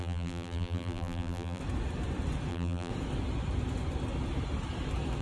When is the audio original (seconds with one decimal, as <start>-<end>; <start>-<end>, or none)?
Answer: 1.6-2.5; 2.9-5.2